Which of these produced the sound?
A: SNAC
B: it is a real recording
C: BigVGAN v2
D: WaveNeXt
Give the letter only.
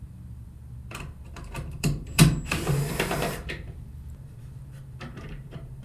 C